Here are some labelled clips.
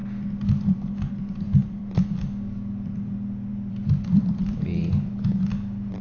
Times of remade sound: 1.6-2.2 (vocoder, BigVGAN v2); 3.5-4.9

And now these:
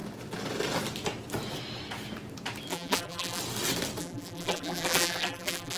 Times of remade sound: 2.7-3.4 (vocoder, BigVGAN v2); 4.0-5.8

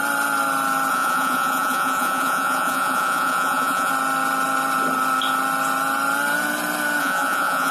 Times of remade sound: 0.9-3.9 (vocoder, Vocos); 7.0-7.7

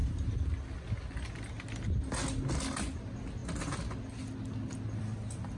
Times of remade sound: none